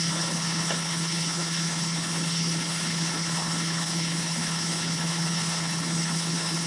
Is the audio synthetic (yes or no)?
yes